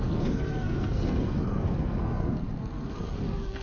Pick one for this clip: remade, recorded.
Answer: remade